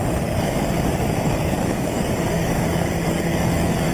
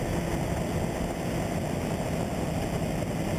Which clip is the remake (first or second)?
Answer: first